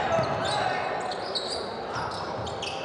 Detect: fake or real real